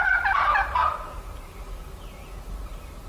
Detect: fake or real fake